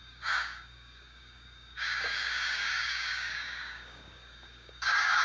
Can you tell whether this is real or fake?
fake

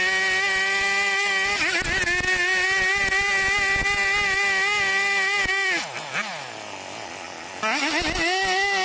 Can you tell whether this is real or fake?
real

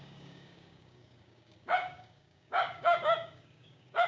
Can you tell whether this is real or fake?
fake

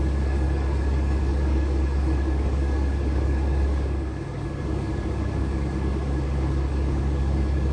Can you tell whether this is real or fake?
fake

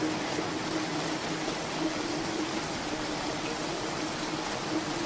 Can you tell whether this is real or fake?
real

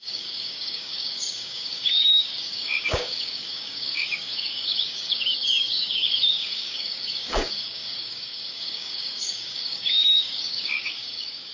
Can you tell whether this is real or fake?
fake